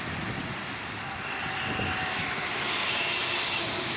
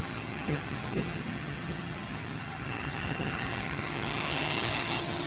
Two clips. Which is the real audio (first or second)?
first